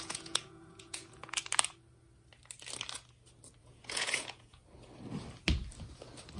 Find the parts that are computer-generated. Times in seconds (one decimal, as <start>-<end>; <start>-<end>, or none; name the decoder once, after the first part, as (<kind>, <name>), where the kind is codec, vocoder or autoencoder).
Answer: 0.0-1.4 (vocoder, Vocos); 3.6-4.6